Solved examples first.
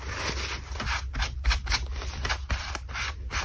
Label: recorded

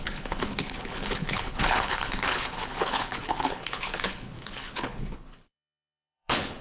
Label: remade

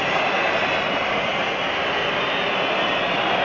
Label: recorded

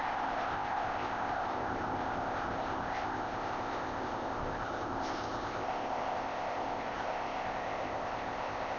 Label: remade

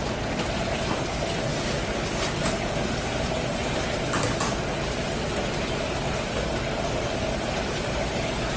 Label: recorded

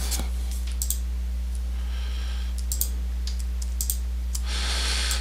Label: recorded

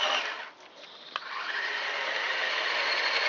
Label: recorded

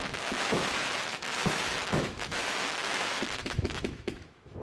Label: remade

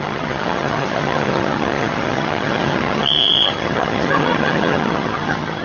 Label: remade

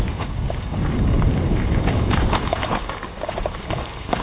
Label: remade